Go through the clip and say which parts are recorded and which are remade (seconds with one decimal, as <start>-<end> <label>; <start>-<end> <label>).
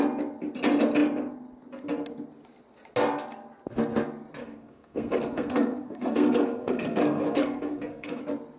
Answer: 0.0-4.4 recorded; 4.4-8.2 remade; 8.2-8.6 recorded